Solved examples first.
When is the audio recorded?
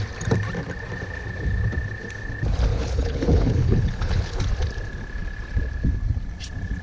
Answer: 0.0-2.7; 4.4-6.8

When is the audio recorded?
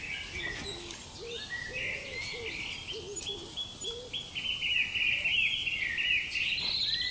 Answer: 0.0-7.1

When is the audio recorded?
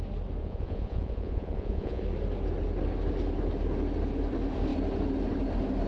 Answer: 0.0-0.4; 2.0-5.9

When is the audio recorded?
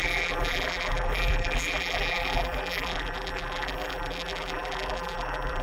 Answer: none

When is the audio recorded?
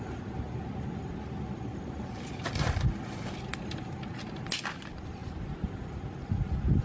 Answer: 0.0-6.8